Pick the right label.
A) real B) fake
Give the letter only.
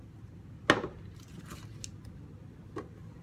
A